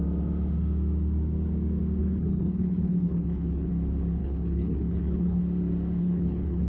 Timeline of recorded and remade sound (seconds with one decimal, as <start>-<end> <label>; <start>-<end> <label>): 0.0-2.0 recorded; 2.0-3.7 remade; 3.7-4.2 recorded; 4.2-5.4 remade; 5.4-6.0 recorded; 6.0-6.7 remade